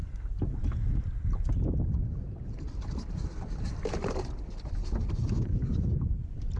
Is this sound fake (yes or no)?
no